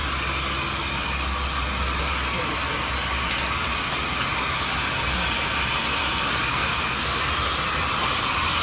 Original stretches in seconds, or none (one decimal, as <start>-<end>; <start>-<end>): 0.0-6.5; 7.2-8.6